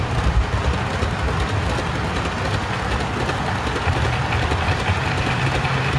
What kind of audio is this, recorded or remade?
recorded